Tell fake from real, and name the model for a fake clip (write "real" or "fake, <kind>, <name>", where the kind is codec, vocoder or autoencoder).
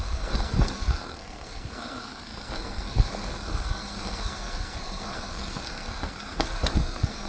fake, codec, SNAC